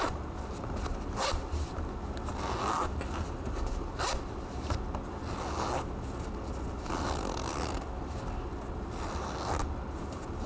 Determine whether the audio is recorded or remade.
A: recorded